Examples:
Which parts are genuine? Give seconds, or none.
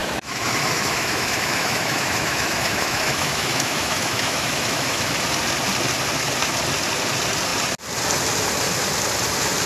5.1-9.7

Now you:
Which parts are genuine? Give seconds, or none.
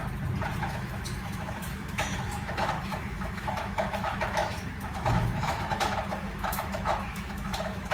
0.0-0.6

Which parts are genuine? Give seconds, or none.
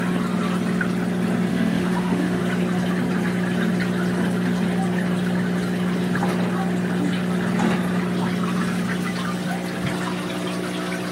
0.0-1.5; 2.4-11.1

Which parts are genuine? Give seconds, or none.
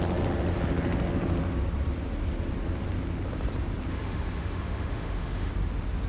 0.0-3.9; 5.5-6.1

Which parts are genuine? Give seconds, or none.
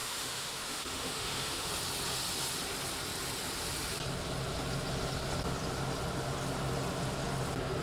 1.7-7.8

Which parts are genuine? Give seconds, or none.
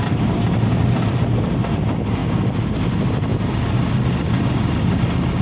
0.0-5.4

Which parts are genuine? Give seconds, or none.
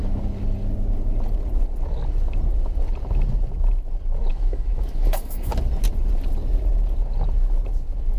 0.0-4.3; 5.5-8.2